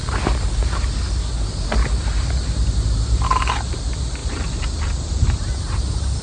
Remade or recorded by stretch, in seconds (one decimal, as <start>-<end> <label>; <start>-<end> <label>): 0.0-6.2 recorded